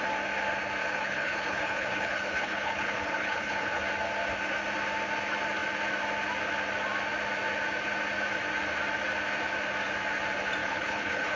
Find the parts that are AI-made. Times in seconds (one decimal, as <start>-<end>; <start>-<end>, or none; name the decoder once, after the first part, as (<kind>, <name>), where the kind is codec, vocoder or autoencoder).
0.8-3.8 (codec, HILCodec); 10.6-11.4

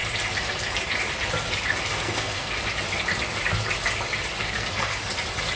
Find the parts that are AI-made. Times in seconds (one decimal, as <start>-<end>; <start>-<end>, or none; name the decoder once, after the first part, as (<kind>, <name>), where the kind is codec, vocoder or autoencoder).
1.9-2.5 (codec, SNAC); 4.4-5.1

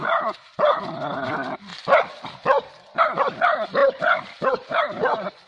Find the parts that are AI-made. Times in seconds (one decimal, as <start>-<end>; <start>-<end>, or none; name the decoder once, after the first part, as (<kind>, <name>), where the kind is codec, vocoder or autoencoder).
1.7-3.0 (vocoder, BigVGAN v2); 3.8-4.8

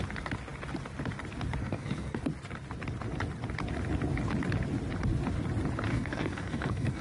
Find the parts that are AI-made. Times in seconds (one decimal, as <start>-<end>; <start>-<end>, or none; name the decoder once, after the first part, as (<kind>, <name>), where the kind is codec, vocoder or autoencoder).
1.6-2.2 (codec, SNAC); 5.9-7.0

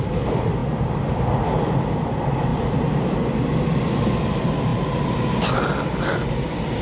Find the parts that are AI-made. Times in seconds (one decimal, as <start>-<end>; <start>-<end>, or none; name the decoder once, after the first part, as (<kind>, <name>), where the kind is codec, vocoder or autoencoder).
2.5-4.0 (vocoder, BigVGAN v2)

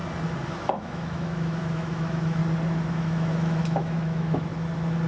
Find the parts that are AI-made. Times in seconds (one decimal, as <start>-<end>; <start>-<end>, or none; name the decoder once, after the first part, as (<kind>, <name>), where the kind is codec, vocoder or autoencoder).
0.5-2.4 (autoencoder, DAC-VAE); 2.9-4.5